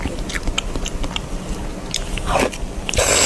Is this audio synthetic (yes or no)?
no